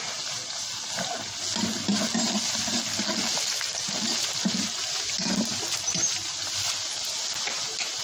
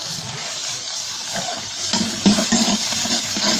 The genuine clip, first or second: first